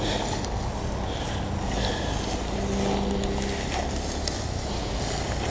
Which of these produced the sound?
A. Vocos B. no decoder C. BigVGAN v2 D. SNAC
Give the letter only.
B